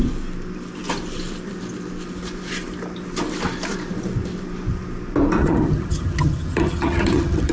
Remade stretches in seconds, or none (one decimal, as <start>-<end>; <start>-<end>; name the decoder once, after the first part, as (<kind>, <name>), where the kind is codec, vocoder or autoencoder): 5.4-7.5 (vocoder, HiFi-GAN)